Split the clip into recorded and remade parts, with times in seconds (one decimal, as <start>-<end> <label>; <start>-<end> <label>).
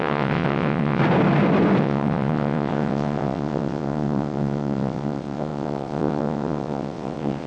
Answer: 0.0-1.0 remade; 1.0-1.8 recorded; 1.8-7.5 remade